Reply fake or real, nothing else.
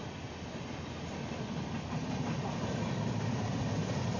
real